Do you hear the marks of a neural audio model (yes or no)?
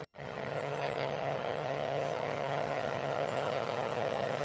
yes